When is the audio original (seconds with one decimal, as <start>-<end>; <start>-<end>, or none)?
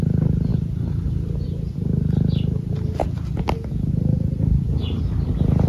0.0-5.7